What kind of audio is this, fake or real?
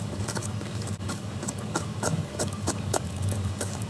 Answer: fake